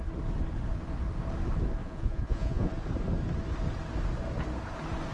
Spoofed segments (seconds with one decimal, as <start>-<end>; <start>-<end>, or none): 1.8-2.7